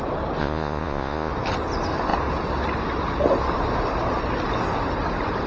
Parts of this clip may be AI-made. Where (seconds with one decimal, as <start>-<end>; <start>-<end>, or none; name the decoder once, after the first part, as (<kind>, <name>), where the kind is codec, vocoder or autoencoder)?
0.4-1.3 (vocoder, Vocos)